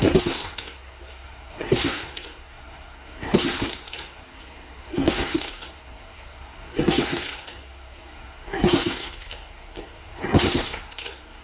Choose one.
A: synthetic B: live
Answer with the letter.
A